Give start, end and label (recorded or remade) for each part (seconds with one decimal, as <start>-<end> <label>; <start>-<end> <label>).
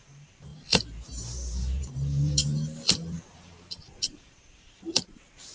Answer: 0.0-5.5 remade